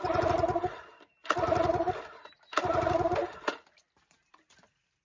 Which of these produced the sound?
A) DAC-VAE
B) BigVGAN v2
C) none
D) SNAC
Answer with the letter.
B